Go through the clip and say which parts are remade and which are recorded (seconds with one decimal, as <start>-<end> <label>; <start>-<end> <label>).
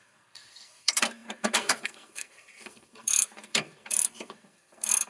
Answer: 0.0-5.1 remade